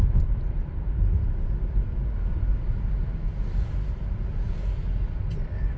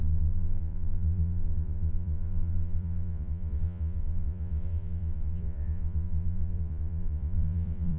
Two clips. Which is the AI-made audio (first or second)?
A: second